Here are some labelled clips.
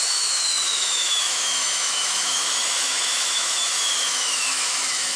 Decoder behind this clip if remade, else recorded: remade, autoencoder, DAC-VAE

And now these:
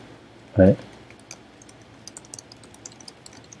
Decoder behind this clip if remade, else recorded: recorded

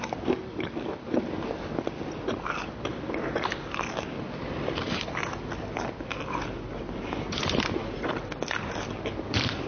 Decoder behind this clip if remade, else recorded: recorded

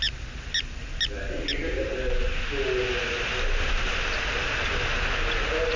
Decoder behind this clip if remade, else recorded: recorded